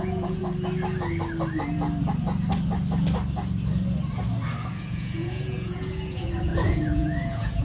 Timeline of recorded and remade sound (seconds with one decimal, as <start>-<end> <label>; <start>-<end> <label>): 0.0-0.4 remade; 0.4-4.7 recorded; 4.7-7.6 remade